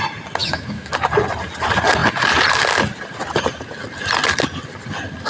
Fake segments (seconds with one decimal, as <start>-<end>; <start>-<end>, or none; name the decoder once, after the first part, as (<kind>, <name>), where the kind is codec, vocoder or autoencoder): 0.4-0.9 (autoencoder, DAC-VAE)